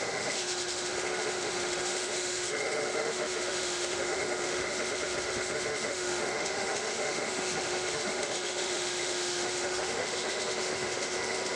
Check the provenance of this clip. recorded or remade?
remade